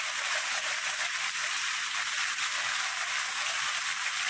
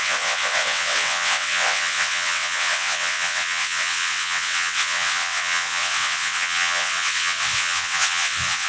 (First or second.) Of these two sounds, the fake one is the second